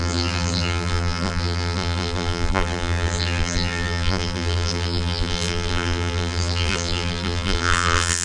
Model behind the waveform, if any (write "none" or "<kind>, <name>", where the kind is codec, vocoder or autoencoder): vocoder, BigVGAN v2